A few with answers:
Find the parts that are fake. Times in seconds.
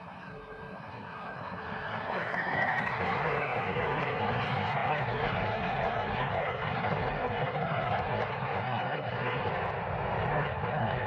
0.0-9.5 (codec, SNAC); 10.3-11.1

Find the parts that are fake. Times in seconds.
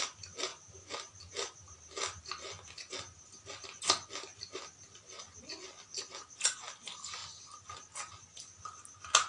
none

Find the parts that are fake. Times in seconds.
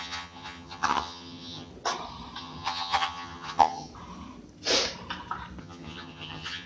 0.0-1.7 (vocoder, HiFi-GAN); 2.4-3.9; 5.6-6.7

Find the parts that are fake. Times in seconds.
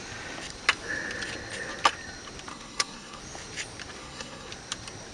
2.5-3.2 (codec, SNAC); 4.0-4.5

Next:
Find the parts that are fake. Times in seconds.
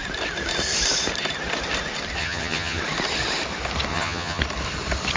2.2-2.8 (vocoder, HiFi-GAN); 3.9-4.4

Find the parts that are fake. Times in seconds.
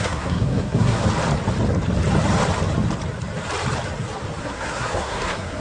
0.0-1.0 (codec, SNAC); 4.4-5.6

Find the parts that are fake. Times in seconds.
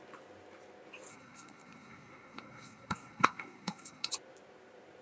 1.1-4.1 (codec, SNAC)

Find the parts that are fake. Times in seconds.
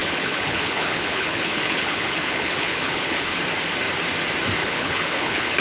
0.0-3.4 (codec, HILCodec); 4.6-5.6